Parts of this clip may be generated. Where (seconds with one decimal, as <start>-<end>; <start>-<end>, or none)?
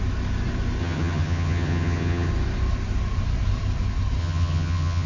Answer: 0.8-2.3; 4.2-5.1